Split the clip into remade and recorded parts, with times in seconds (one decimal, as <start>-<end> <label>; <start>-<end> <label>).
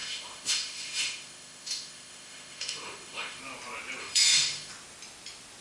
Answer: 0.0-3.4 remade; 3.4-4.0 recorded; 4.0-4.7 remade; 4.7-5.6 recorded